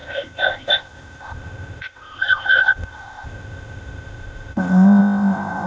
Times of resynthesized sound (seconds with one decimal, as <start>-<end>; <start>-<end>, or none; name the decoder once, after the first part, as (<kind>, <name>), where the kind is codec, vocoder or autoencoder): 0.0-5.7 (codec, ZipCodec)